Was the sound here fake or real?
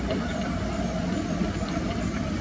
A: real